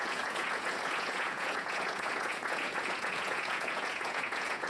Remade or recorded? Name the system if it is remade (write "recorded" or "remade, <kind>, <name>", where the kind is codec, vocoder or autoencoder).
remade, vocoder, Vocos